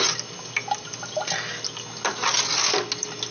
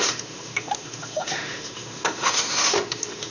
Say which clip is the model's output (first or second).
second